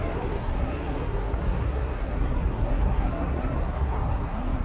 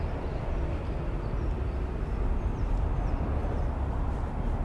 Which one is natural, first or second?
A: second